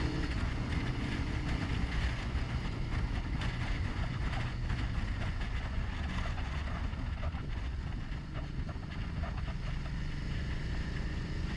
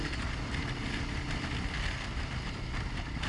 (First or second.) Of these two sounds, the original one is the second